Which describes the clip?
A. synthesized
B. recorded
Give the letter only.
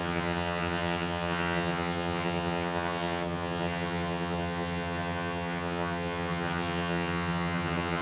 A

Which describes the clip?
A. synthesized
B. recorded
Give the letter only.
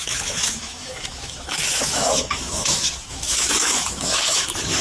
A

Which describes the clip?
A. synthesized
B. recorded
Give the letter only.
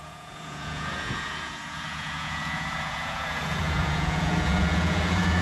A